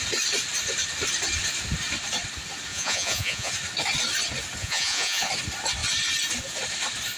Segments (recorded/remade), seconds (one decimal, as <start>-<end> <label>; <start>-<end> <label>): 0.0-2.7 recorded; 2.7-3.5 remade; 3.5-4.6 recorded; 4.6-5.3 remade; 5.3-7.2 recorded